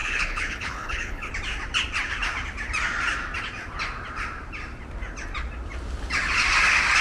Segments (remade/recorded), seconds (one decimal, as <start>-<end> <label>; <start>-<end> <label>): 0.0-1.3 remade; 1.3-7.0 recorded